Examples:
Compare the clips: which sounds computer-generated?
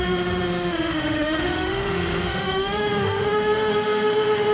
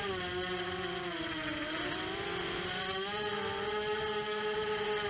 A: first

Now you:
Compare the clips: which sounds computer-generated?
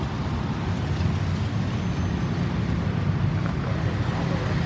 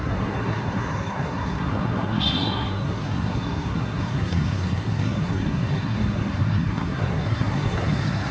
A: second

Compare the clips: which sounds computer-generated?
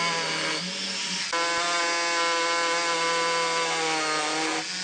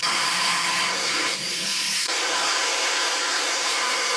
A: second